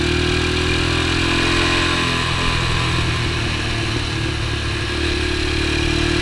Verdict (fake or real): real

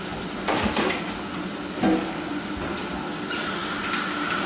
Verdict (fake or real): real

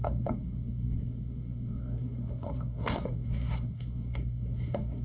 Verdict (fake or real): fake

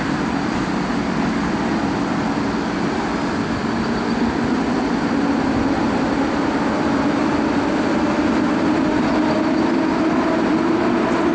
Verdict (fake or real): real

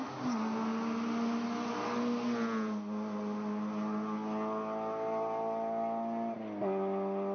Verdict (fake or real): real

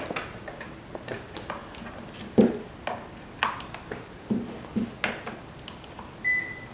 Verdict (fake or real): real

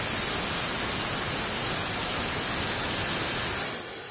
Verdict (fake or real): real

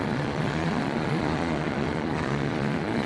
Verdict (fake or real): fake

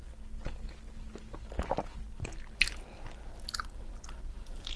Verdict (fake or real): real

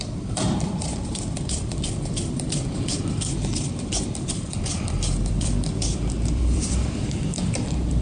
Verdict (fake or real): fake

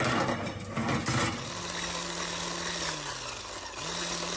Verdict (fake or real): real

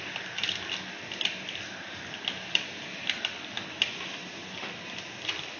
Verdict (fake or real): real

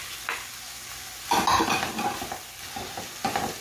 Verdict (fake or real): real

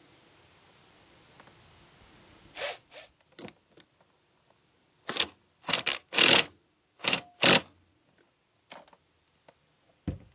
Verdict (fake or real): real